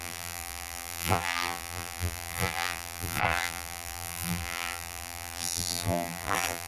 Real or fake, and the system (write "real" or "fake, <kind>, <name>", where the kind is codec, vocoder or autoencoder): fake, vocoder, BigVGAN v2